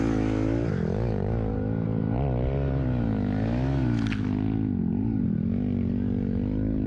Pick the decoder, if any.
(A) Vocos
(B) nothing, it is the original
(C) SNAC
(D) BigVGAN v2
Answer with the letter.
B